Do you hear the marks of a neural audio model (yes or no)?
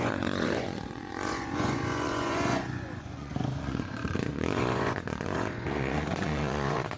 yes